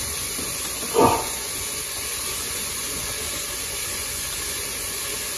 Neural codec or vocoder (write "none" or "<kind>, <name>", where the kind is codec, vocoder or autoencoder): vocoder, Vocos